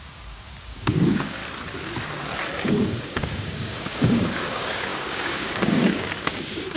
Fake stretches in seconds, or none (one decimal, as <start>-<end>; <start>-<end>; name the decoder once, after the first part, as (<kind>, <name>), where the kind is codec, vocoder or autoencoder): 0.0-1.4 (codec, DAC); 2.6-6.8